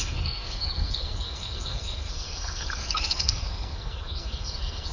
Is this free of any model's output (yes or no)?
no